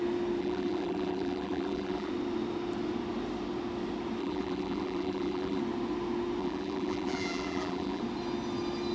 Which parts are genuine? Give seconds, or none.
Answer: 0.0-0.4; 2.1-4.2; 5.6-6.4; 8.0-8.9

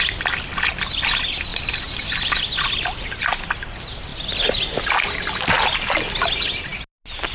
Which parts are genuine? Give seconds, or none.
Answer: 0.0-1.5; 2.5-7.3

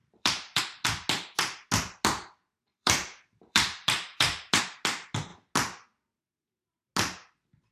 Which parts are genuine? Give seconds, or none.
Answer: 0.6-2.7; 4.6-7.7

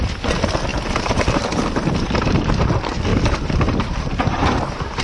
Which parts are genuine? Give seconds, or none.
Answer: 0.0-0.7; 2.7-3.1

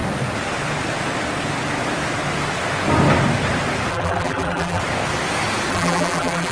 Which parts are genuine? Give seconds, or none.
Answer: 0.0-3.9; 4.8-5.7